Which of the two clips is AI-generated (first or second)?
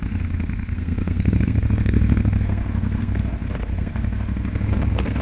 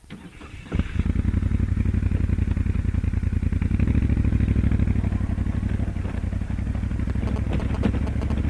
first